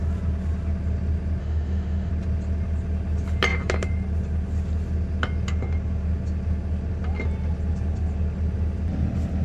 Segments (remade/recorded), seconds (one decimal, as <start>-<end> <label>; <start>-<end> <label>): 0.0-1.4 recorded; 1.4-2.1 remade; 2.1-9.4 recorded

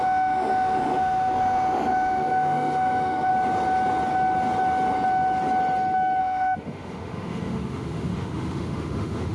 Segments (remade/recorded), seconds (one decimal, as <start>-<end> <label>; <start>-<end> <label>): 0.0-3.3 remade; 3.3-6.2 recorded; 6.2-9.3 remade